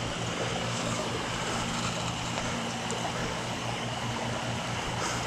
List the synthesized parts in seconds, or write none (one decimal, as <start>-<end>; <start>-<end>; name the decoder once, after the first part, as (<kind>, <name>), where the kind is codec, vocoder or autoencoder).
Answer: 0.5-1.1 (codec, DAC); 3.2-4.1